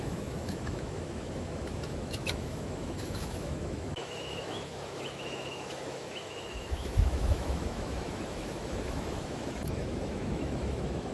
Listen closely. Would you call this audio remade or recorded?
remade